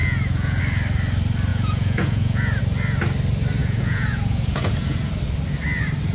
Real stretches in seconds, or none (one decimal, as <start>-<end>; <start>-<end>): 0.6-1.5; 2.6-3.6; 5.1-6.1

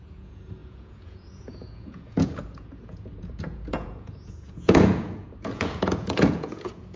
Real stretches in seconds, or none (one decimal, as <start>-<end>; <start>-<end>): none

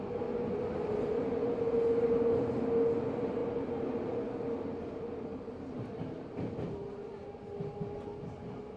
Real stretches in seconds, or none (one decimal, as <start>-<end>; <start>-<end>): 0.0-8.8

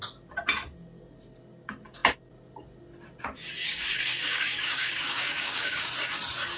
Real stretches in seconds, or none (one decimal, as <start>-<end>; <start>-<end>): 0.0-3.6; 5.9-6.6

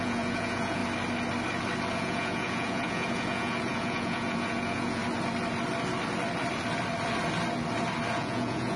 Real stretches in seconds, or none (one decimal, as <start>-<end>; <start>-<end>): 0.8-1.9; 5.0-8.1

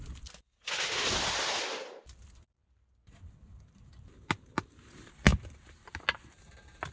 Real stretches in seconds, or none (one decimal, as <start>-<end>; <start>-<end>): 0.0-6.9